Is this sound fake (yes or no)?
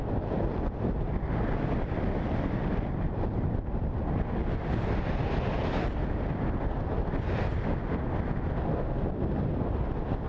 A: no